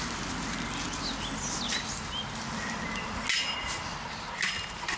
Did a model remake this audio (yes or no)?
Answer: no